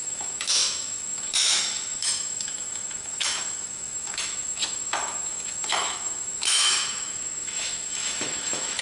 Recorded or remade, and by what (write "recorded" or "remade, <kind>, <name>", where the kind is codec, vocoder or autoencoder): remade, autoencoder, DAC-VAE